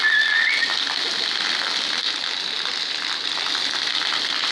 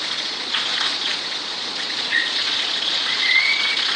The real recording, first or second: first